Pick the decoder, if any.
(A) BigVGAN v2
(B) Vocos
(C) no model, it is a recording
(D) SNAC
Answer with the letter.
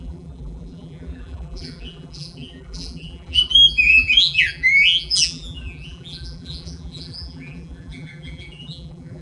A